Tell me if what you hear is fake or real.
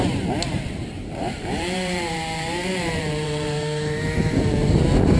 fake